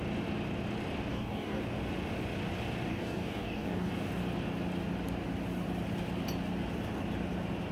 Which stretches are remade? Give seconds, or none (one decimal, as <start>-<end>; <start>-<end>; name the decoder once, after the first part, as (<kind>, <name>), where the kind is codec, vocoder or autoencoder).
1.1-1.6 (codec, DAC); 2.9-3.9